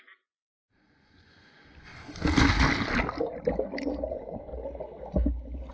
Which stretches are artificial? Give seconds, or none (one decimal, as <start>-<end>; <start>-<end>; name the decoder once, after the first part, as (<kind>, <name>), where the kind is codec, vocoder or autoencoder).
0.0-1.9 (vocoder, Vocos); 4.1-4.5

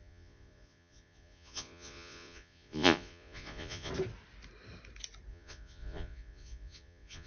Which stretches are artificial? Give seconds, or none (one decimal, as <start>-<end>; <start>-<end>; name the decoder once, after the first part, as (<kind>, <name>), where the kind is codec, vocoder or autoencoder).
0.0-3.9 (vocoder, Vocos); 5.3-7.3

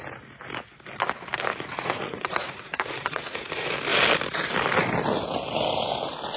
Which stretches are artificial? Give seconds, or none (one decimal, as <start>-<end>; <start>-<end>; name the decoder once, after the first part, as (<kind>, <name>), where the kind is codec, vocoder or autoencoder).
1.5-3.5 (vocoder, Vocos)

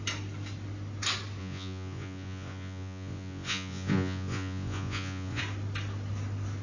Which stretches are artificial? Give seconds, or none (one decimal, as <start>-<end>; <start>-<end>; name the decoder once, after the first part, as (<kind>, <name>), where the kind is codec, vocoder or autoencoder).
1.4-5.4 (vocoder, Vocos)

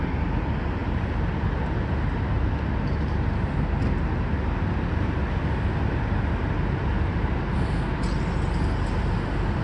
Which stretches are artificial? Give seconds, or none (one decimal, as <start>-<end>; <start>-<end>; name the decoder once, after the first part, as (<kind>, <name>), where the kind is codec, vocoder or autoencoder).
none